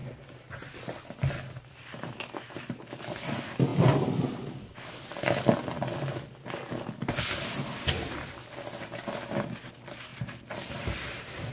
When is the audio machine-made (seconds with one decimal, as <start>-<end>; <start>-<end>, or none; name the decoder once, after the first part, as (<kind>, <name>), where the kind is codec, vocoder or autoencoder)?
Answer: none